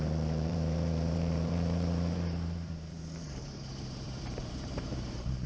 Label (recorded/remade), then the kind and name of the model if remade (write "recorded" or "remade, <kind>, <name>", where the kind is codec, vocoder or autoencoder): remade, vocoder, BigVGAN v2